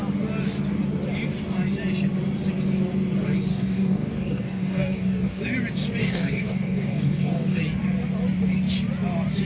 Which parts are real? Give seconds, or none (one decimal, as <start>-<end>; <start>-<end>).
0.0-3.5; 5.4-6.0; 7.6-9.4